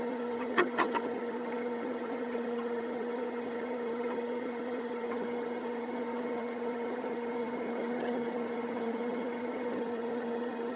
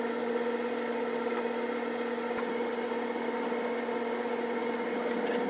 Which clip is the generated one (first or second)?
first